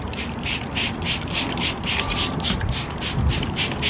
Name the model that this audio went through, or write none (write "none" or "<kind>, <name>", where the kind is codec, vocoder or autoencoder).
none